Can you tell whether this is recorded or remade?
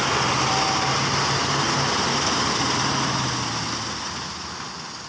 recorded